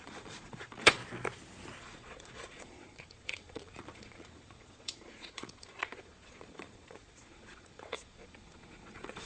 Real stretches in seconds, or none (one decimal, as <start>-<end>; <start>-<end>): 1.0-1.8